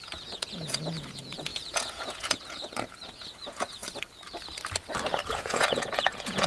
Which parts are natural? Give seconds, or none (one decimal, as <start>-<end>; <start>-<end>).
3.8-5.3